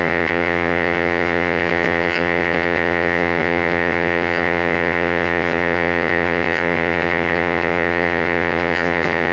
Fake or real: fake